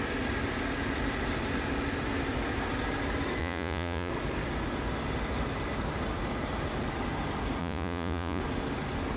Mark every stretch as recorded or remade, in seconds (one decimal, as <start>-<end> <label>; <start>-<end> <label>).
0.0-3.4 recorded; 3.4-4.1 remade; 4.1-7.6 recorded; 7.6-8.4 remade; 8.4-9.2 recorded